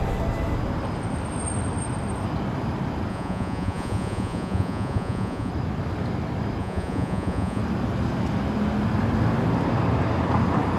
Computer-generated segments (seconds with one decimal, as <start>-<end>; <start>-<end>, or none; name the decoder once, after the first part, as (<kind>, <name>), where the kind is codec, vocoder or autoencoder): 3.1-5.5 (vocoder, Vocos); 6.6-7.6